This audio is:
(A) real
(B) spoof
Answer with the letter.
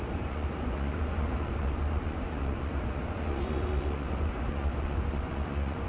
B